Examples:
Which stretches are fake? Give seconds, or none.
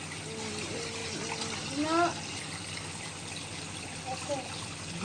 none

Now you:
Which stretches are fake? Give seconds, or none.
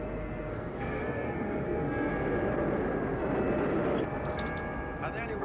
0.0-2.1